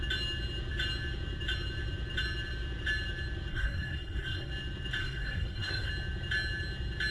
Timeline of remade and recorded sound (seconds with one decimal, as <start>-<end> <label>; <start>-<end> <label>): 0.0-3.5 recorded; 3.5-4.5 remade; 4.5-5.0 recorded; 5.0-5.9 remade; 5.9-7.1 recorded